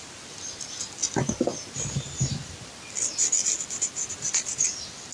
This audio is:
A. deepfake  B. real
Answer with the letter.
B